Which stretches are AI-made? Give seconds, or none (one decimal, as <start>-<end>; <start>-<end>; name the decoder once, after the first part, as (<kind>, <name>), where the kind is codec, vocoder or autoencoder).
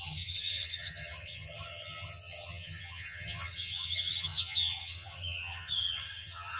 0.0-6.6 (vocoder, HiFi-GAN)